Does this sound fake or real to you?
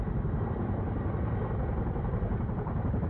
real